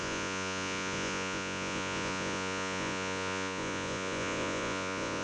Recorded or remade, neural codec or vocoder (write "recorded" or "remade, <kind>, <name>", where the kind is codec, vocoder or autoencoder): remade, vocoder, Vocos